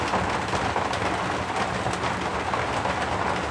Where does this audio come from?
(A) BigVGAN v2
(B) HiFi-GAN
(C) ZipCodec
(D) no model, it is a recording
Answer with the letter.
D